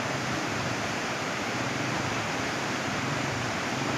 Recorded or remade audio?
remade